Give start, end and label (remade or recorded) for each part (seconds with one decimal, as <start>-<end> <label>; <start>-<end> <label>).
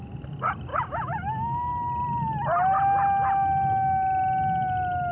0.0-0.7 recorded; 0.7-1.7 remade; 1.7-5.1 recorded